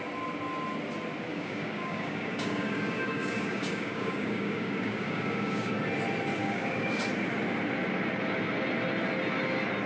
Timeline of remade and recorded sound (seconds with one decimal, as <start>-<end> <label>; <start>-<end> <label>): 0.0-1.3 recorded; 1.3-5.7 remade; 5.7-6.4 recorded; 6.4-7.0 remade; 7.0-9.9 recorded

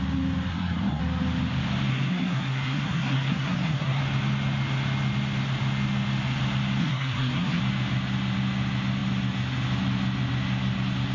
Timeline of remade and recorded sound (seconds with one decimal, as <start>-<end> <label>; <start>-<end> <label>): 0.0-0.5 recorded; 0.5-1.0 remade; 1.0-1.9 recorded; 1.9-4.0 remade; 4.0-6.8 recorded; 6.8-7.6 remade; 7.6-11.1 recorded

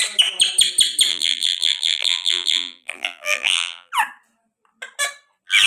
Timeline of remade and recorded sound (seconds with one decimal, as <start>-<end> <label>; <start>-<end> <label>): 0.0-1.1 recorded; 1.1-3.9 remade; 3.9-5.7 recorded

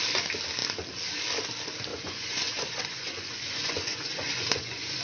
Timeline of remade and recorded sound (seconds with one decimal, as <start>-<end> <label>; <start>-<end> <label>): 0.0-1.9 recorded; 1.9-5.0 remade